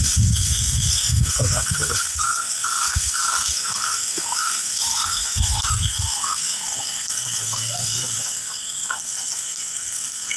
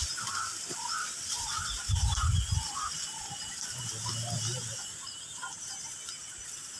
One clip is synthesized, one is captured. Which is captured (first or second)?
second